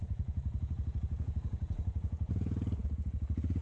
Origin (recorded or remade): remade